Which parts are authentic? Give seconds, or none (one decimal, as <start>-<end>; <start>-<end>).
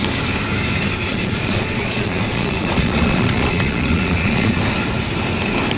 0.0-1.1; 4.6-5.8